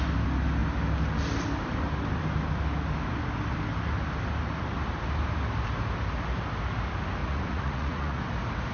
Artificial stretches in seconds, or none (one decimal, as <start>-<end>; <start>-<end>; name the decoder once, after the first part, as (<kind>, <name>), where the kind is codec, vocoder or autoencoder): 7.2-8.2 (vocoder, Vocos)